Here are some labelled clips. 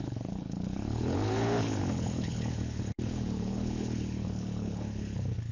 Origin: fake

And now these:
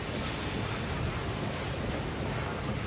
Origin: real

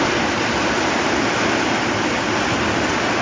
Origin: real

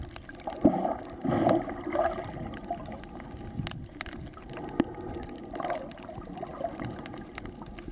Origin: real